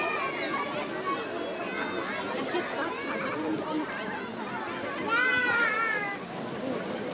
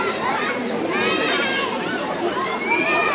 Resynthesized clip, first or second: second